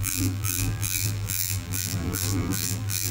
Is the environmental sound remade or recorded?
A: remade